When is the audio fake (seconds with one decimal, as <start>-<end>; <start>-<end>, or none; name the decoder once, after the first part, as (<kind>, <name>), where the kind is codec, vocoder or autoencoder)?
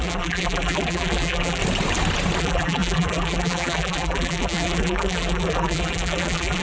0.0-1.6 (vocoder, BigVGAN v2); 2.4-6.6